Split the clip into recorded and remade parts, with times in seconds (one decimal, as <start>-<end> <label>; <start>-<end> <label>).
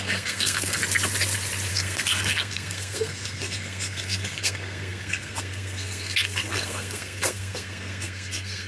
0.0-0.8 remade; 0.8-1.7 recorded; 1.7-8.7 remade